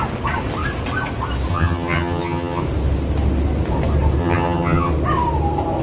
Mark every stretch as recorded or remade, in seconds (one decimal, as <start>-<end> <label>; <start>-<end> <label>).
0.0-1.5 recorded; 1.5-2.6 remade; 2.6-4.2 recorded; 4.2-4.9 remade; 4.9-5.8 recorded